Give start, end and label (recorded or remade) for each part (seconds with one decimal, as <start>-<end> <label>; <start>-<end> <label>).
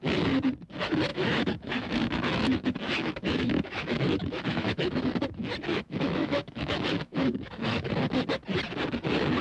0.0-1.1 recorded; 1.1-5.1 remade; 5.1-5.7 recorded; 5.7-7.9 remade; 7.9-9.4 recorded